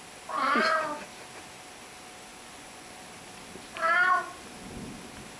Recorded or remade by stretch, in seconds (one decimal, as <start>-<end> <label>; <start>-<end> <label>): 0.0-2.3 recorded; 2.3-3.0 remade; 3.0-5.4 recorded